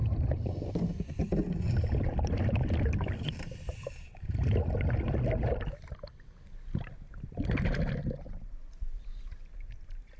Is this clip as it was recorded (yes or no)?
yes